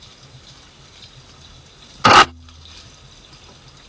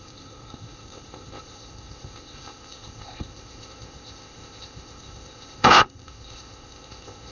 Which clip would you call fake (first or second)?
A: second